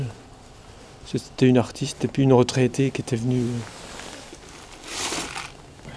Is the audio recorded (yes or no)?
yes